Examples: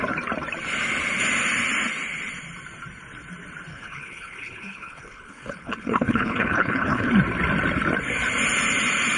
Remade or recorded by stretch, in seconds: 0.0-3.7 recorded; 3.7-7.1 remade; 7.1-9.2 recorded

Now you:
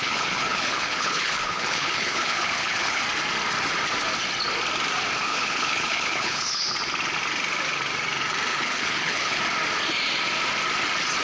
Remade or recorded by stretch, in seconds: 0.0-3.0 remade; 3.0-5.3 recorded; 5.3-6.6 remade; 6.6-8.5 recorded; 8.5-9.4 remade; 9.4-11.2 recorded

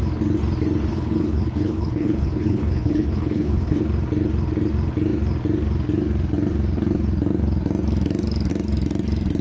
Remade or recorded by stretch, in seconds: 0.0-0.9 recorded; 0.9-3.8 remade; 3.8-9.4 recorded

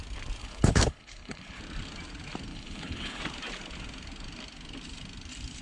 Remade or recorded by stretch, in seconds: 0.0-0.4 recorded; 0.4-1.6 remade; 1.6-2.5 recorded; 2.5-3.2 remade; 3.2-5.6 recorded

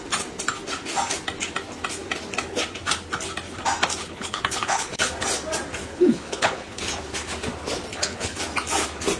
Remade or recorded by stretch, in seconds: 0.0-4.0 recorded; 4.0-5.0 remade; 5.0-5.8 recorded; 5.8-6.8 remade; 6.8-7.9 recorded; 7.9-8.4 remade; 8.4-9.2 recorded